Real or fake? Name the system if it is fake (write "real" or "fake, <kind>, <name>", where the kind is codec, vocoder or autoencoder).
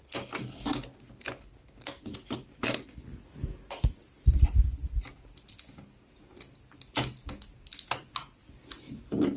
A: real